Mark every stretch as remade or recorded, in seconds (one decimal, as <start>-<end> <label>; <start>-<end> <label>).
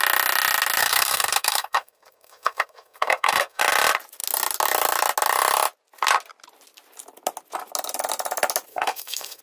0.0-0.8 recorded; 0.8-3.6 remade; 3.6-8.7 recorded; 8.7-9.4 remade